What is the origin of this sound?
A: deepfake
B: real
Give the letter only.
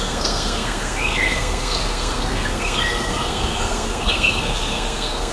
A